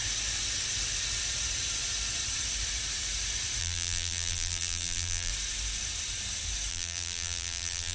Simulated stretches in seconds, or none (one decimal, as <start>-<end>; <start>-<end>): 3.6-5.3; 6.7-7.9